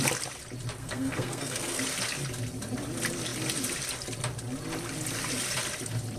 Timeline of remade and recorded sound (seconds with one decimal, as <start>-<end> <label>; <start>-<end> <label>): 0.0-0.8 recorded; 0.8-1.8 remade; 1.8-6.2 recorded